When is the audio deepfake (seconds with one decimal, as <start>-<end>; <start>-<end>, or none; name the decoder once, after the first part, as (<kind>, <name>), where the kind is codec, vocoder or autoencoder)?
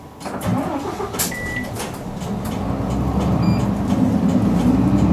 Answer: none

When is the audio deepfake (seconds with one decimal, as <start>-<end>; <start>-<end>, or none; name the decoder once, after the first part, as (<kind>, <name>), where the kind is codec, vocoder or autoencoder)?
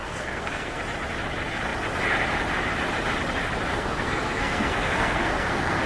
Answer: 0.0-0.8 (codec, SNAC); 3.7-5.9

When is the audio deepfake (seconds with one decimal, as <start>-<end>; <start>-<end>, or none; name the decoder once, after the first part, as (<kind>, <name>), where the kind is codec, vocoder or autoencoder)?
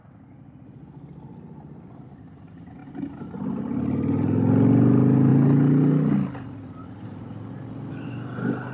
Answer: none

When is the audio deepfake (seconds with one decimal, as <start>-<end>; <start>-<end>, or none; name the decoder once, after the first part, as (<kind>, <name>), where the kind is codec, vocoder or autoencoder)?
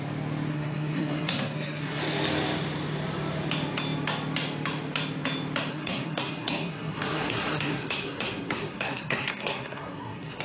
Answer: 0.5-2.0 (codec, SNAC); 5.7-10.4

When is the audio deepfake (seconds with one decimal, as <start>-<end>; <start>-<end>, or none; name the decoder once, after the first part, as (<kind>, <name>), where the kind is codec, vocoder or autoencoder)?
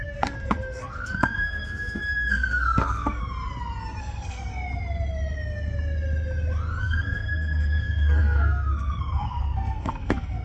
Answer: 0.0-3.2 (codec, SNAC); 4.0-4.5; 6.8-10.4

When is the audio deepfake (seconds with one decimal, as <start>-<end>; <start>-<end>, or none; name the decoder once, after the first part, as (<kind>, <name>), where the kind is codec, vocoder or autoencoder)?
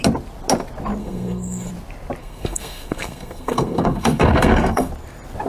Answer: 1.0-1.7 (codec, SNAC); 2.2-4.9